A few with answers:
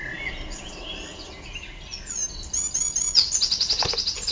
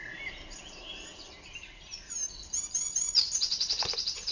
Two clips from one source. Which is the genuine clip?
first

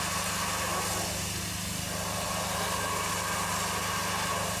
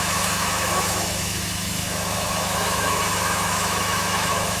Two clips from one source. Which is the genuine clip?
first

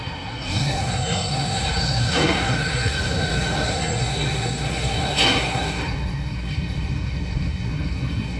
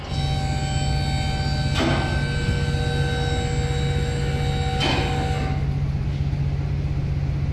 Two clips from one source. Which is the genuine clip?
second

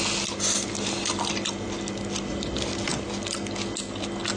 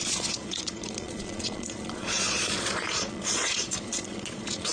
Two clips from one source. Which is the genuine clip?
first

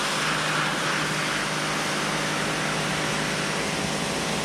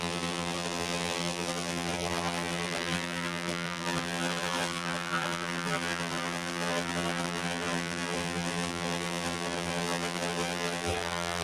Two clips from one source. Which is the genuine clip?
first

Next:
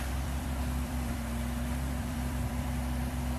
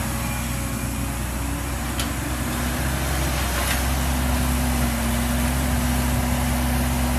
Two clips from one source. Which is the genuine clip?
second